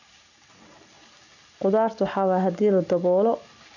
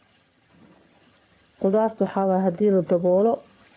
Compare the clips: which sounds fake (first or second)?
second